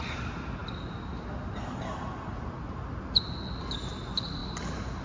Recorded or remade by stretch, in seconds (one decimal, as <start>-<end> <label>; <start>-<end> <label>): 0.0-5.0 recorded